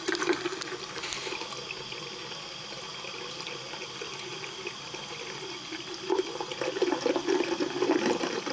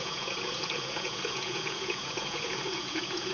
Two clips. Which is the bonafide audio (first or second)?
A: first